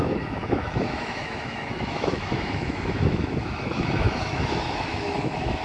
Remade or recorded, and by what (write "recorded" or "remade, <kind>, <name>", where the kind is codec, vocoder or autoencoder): remade, autoencoder, DAC-VAE